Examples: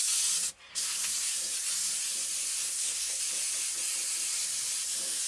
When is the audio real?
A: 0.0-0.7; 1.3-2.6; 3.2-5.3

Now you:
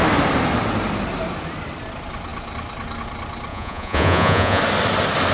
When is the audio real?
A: 0.0-3.5; 4.6-5.3